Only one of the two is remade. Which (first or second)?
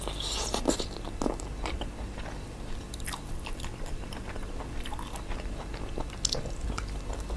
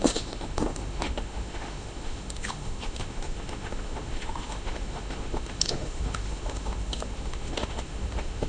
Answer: second